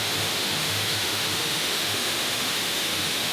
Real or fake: fake